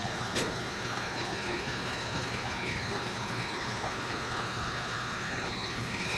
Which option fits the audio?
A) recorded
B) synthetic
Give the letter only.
B